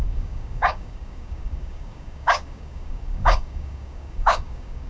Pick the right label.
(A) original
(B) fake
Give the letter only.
B